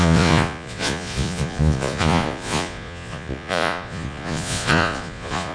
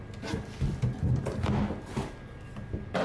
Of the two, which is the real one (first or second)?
second